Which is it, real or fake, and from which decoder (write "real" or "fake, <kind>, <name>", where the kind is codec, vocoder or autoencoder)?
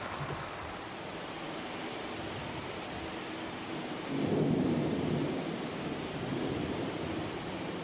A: real